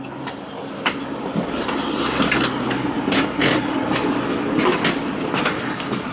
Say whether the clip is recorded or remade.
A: recorded